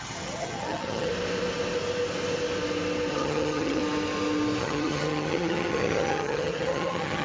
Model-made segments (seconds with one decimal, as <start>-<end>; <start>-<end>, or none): 0.0-1.1; 3.1-3.8; 4.6-7.2